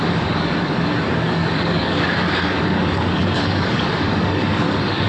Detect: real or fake fake